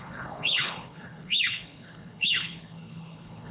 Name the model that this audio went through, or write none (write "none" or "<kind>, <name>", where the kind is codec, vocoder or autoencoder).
codec, HILCodec